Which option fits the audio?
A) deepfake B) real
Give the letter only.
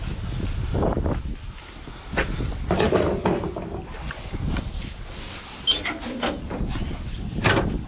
B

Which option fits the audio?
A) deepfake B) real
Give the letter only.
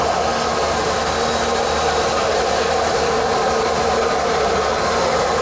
B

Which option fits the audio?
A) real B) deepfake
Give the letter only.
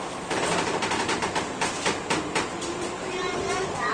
B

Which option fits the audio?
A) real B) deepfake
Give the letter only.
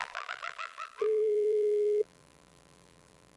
B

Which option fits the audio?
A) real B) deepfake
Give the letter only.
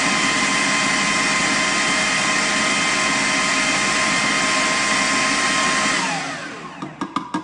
A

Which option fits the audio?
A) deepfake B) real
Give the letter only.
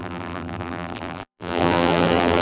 A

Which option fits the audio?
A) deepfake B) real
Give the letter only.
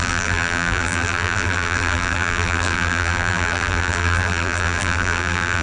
A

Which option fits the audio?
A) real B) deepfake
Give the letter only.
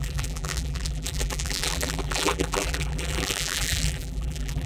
B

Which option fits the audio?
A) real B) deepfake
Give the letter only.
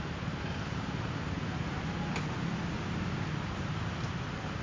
A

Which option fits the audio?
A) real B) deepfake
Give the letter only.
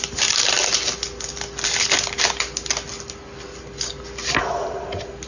A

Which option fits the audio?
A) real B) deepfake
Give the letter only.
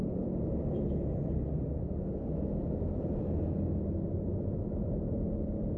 A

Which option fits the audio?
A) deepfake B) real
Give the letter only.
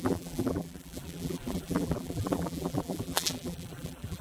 A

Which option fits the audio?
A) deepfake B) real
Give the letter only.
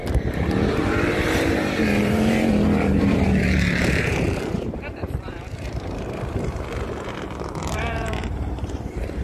A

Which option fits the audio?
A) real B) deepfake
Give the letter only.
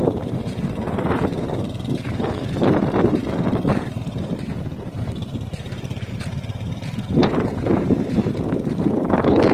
B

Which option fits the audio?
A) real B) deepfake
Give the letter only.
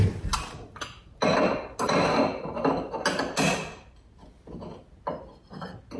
A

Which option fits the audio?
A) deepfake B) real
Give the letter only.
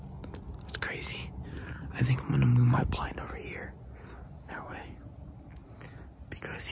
B